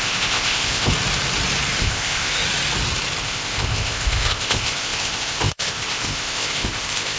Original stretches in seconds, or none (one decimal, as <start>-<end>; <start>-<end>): 0.9-1.8; 2.4-3.2